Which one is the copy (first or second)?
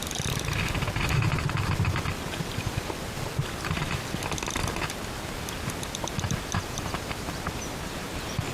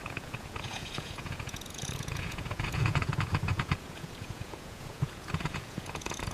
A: second